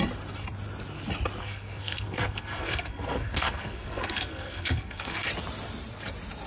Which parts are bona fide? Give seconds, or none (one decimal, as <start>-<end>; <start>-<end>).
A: 0.0-1.4; 5.3-6.5